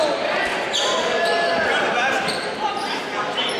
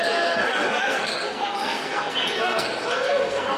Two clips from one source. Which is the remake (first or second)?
second